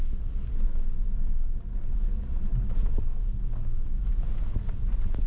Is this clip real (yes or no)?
yes